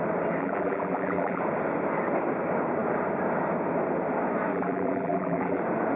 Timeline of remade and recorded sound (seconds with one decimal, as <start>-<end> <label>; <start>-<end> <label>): 0.0-0.4 recorded; 0.4-1.4 remade; 1.4-4.5 recorded; 4.5-5.6 remade; 5.6-6.0 recorded